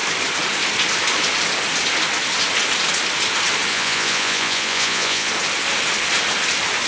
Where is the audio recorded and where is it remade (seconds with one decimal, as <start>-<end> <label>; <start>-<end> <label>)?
0.0-3.7 recorded; 3.7-5.3 remade; 5.3-6.9 recorded